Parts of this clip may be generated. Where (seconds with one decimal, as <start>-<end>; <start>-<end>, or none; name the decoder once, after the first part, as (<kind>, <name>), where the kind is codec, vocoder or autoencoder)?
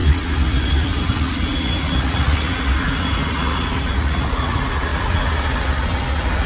0.0-6.5 (vocoder, Vocos)